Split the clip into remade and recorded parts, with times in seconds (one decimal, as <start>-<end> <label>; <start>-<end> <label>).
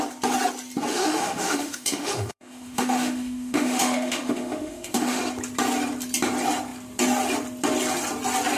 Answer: 0.0-0.9 recorded; 0.9-5.2 remade; 5.2-8.6 recorded